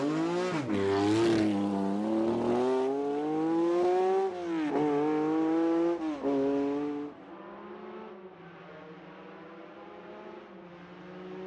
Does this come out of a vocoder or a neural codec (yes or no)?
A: no